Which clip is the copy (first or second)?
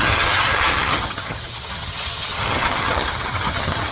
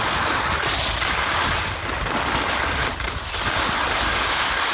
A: first